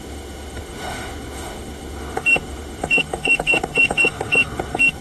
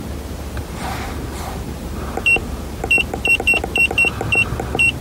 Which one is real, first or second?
second